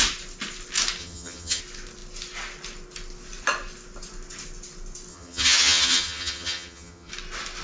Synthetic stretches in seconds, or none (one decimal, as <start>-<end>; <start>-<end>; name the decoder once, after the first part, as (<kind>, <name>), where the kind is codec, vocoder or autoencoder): 1.0-1.6 (vocoder, HiFi-GAN); 5.1-7.1

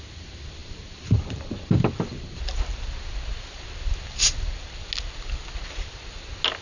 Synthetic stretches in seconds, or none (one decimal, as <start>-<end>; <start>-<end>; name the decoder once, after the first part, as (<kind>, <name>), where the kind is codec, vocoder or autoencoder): none

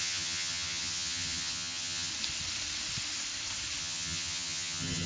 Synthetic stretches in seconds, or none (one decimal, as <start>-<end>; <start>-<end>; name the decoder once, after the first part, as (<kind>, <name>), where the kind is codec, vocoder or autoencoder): 0.0-2.1 (vocoder, HiFi-GAN); 3.8-5.1

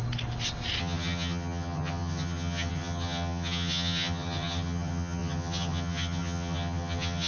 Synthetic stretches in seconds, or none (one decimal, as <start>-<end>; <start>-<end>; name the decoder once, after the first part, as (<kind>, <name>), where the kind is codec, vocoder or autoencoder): 0.8-7.3 (vocoder, HiFi-GAN)